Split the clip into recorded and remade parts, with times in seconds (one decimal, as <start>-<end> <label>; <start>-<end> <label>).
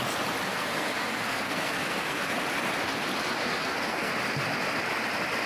0.0-0.5 recorded; 0.5-2.3 remade; 2.3-3.4 recorded; 3.4-4.1 remade; 4.1-5.5 recorded